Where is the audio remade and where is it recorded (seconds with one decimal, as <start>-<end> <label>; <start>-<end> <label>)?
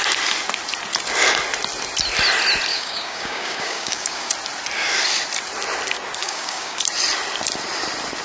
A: 0.0-2.7 recorded; 2.7-4.3 remade; 4.3-6.2 recorded; 6.2-6.8 remade; 6.8-8.2 recorded